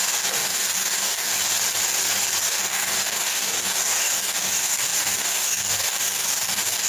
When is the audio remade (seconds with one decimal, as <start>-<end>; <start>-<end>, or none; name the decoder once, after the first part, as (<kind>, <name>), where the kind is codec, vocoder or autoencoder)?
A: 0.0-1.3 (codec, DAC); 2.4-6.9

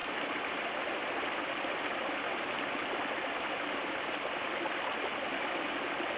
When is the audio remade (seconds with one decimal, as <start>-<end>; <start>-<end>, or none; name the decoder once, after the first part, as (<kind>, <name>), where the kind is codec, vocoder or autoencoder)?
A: none

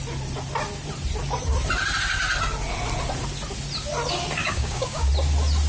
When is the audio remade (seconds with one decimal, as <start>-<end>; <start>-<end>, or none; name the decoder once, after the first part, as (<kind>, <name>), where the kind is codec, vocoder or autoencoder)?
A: 4.4-5.1 (codec, DAC)